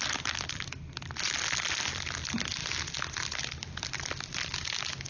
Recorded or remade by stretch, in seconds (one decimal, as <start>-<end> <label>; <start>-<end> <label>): 0.0-5.1 recorded